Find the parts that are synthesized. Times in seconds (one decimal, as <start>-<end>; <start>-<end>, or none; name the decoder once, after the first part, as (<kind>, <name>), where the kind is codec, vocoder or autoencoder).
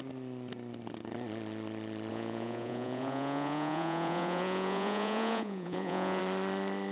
2.1-6.2 (vocoder, Vocos)